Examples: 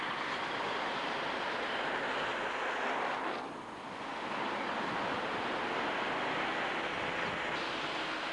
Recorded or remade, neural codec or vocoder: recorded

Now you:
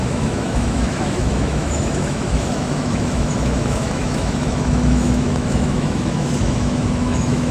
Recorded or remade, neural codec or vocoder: remade, autoencoder, DAC-VAE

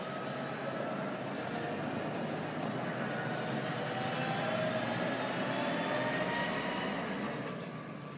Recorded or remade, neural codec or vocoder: recorded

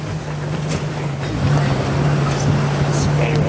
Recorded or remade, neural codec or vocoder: recorded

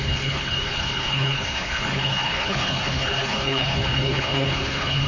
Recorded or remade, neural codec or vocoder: remade, codec, HILCodec